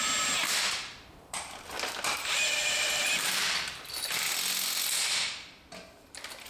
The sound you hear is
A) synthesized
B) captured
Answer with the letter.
A